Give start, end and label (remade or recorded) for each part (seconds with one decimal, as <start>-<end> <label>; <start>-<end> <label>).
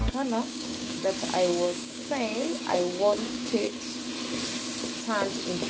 0.0-1.0 remade; 1.0-1.5 recorded; 1.5-3.7 remade; 3.7-5.7 recorded